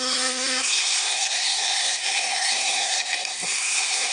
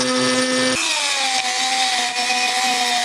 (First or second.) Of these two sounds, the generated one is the first